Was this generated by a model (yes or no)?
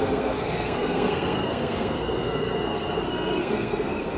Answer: yes